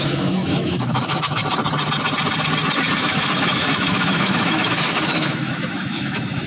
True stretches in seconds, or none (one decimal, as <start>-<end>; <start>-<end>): 1.4-3.0